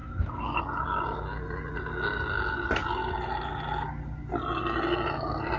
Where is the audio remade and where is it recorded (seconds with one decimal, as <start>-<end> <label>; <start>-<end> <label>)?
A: 0.0-0.6 remade; 0.6-5.6 recorded